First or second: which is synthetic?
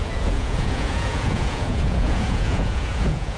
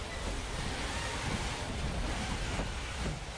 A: first